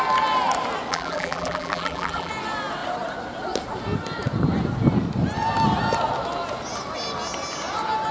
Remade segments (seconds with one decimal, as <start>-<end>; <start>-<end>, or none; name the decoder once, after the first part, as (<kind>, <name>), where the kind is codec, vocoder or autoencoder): 0.9-2.3 (vocoder, BigVGAN v2)